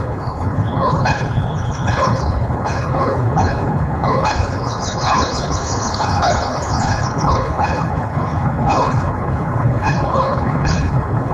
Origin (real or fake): fake